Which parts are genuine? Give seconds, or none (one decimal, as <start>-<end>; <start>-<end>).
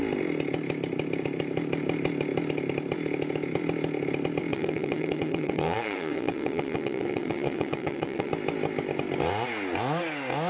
0.0-4.5; 8.3-10.5